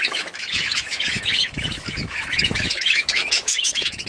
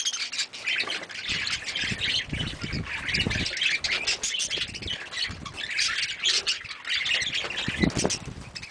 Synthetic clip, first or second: first